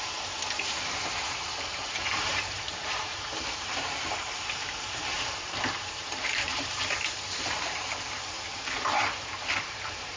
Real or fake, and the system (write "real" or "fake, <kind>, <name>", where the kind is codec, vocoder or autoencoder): fake, vocoder, BigVGAN v2